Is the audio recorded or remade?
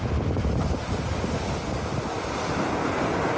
recorded